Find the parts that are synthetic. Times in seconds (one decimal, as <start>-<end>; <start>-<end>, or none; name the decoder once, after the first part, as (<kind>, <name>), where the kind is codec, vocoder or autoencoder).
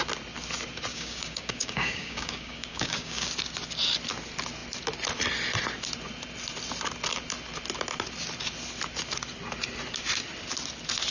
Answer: 0.9-3.3 (codec, DAC)